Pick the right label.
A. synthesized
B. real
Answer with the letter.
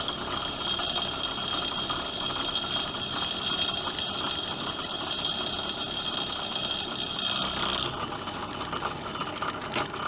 B